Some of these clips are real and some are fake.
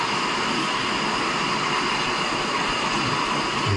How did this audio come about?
real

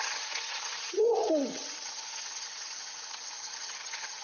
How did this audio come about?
fake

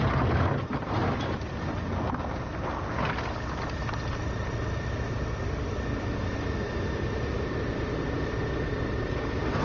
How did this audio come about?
real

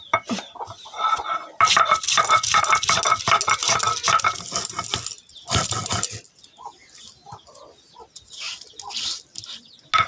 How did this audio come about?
real